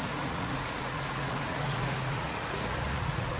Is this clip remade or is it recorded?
remade